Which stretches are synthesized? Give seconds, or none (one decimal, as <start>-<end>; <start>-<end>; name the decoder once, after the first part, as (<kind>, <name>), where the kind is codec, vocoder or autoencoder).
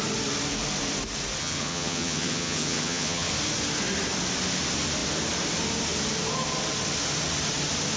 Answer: 1.4-3.3 (vocoder, HiFi-GAN)